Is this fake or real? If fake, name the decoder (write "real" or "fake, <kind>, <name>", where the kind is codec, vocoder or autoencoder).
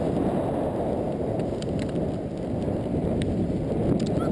real